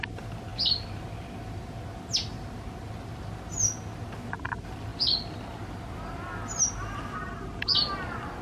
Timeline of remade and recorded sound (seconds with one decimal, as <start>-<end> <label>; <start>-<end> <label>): 0.0-8.4 recorded